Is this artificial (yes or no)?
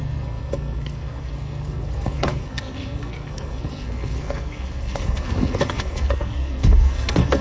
yes